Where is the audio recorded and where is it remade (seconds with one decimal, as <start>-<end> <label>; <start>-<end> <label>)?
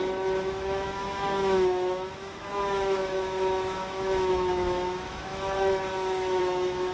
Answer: 0.0-6.9 remade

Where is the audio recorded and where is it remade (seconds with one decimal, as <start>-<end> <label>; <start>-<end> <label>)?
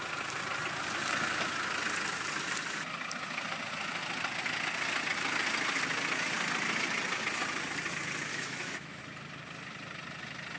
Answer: 0.0-8.3 recorded; 8.3-9.0 remade; 9.0-10.6 recorded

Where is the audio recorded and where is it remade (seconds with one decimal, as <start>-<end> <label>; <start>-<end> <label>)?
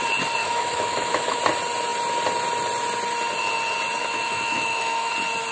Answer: 0.0-0.4 recorded; 0.4-1.4 remade; 1.4-4.0 recorded; 4.0-5.1 remade; 5.1-5.5 recorded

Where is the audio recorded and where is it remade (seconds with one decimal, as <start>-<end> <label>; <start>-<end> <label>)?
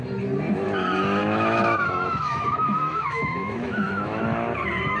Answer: 0.0-1.2 recorded; 1.2-4.2 remade; 4.2-5.0 recorded